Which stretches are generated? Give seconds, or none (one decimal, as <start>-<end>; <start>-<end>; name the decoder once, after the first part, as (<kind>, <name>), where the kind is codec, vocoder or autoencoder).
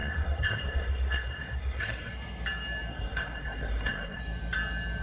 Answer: 0.0-2.1 (codec, SNAC); 2.9-4.2